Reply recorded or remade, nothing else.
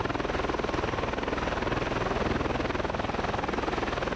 recorded